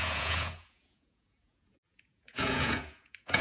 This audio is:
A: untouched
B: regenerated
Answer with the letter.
B